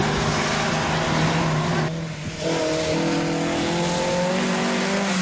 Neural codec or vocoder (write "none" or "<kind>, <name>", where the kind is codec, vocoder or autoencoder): none